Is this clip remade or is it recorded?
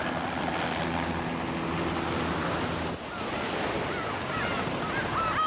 recorded